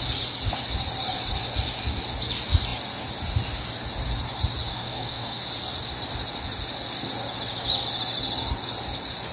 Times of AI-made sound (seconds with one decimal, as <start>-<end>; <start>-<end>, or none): 4.7-5.4